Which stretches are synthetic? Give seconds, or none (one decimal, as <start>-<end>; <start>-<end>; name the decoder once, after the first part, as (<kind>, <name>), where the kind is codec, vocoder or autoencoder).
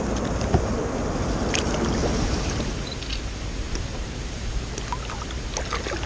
2.0-3.0 (vocoder, BigVGAN v2); 3.9-4.6